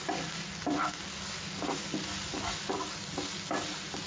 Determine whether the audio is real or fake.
real